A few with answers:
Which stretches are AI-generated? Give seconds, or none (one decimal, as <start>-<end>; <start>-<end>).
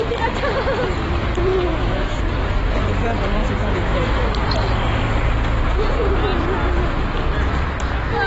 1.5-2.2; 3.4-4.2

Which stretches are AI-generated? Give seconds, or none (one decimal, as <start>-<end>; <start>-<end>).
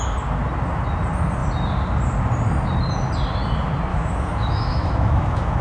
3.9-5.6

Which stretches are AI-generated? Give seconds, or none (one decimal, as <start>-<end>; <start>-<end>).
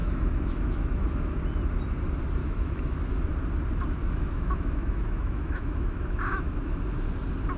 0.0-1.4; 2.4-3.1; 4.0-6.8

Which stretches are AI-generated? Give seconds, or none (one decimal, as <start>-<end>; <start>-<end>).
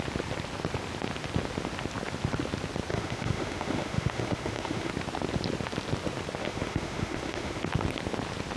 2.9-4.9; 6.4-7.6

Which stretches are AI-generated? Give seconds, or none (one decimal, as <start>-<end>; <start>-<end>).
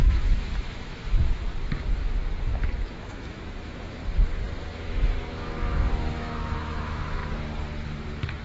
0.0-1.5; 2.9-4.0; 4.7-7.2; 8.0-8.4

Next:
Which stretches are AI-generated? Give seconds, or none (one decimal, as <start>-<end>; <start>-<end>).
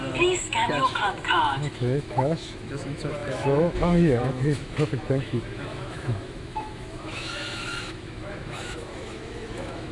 0.0-9.9